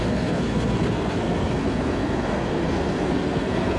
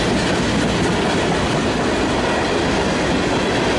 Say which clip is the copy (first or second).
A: first